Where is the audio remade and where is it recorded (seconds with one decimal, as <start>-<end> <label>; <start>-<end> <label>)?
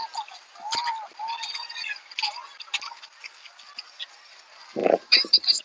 0.0-4.8 recorded; 4.8-5.6 remade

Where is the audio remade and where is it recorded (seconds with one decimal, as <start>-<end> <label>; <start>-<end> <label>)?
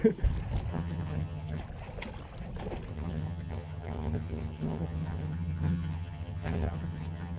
0.0-0.7 recorded; 0.7-1.6 remade; 1.6-2.9 recorded; 2.9-7.4 remade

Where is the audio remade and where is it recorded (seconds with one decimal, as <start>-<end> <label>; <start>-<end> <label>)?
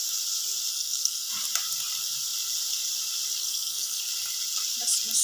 0.0-0.7 recorded; 0.7-1.3 remade; 1.3-3.4 recorded; 3.4-4.0 remade; 4.0-5.2 recorded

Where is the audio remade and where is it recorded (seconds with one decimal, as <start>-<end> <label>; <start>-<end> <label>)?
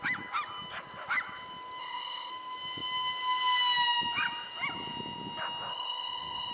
0.0-1.8 recorded; 1.8-2.3 remade; 2.3-5.7 recorded; 5.7-6.5 remade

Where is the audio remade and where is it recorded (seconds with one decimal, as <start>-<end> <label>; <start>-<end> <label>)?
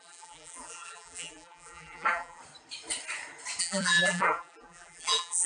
0.0-2.4 remade; 2.4-3.6 recorded; 3.6-5.5 remade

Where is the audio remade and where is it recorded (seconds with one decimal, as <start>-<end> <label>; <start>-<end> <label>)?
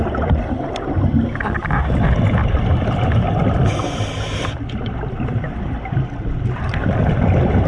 0.0-7.7 recorded